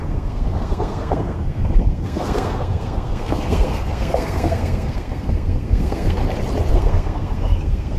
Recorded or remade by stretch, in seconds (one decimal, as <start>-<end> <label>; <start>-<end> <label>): 0.0-6.2 remade; 6.2-6.7 recorded; 6.7-8.0 remade